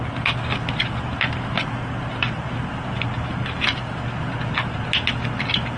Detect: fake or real real